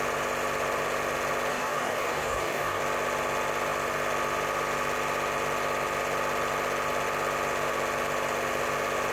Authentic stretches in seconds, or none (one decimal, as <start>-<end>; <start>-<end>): 0.0-1.5; 2.8-9.1